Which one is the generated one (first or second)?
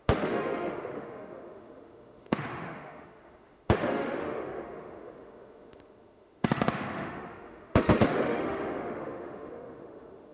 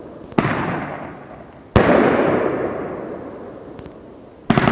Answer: first